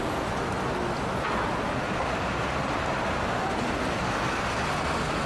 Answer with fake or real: real